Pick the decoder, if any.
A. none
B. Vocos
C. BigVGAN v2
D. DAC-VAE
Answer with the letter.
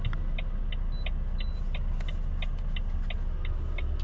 A